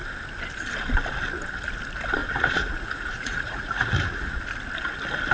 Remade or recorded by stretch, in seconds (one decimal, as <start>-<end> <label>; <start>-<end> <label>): 0.0-2.2 recorded; 2.2-4.4 remade; 4.4-5.3 recorded